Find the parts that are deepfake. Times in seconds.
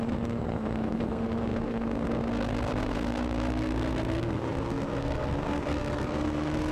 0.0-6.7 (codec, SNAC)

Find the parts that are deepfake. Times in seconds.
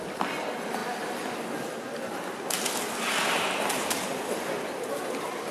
none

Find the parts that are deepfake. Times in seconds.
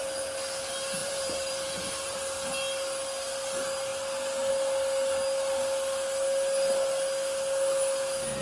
1.0-2.2 (vocoder, BigVGAN v2)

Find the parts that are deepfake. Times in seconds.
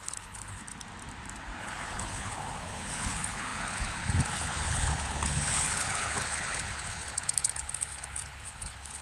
0.0-0.6 (codec, HILCodec); 1.6-9.0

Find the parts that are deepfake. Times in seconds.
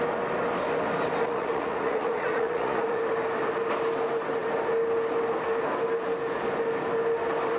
1.2-3.0 (vocoder, Vocos)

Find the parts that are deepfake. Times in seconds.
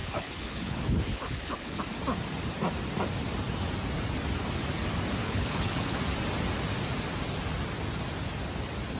0.0-1.8 (codec, HILCodec); 5.2-6.0